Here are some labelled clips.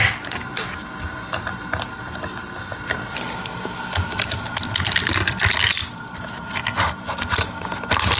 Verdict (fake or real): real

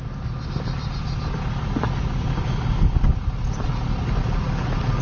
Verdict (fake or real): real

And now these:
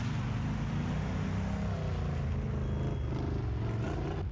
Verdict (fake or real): real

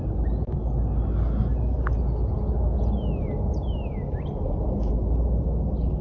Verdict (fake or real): real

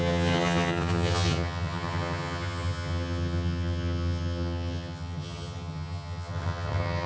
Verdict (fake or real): fake